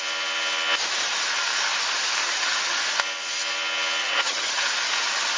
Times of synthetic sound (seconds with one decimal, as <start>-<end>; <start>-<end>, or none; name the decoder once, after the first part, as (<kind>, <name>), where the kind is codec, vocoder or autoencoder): 2.2-2.8 (vocoder, HiFi-GAN); 4.0-4.7